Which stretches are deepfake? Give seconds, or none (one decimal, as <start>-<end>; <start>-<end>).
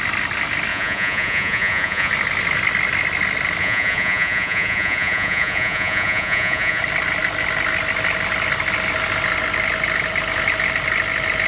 0.7-2.1; 3.6-6.8